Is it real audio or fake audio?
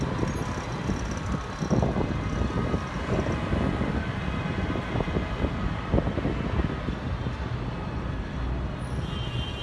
real